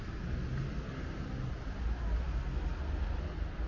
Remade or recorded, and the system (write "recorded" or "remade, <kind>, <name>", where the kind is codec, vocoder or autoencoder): recorded